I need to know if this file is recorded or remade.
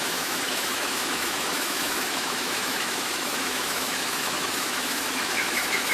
remade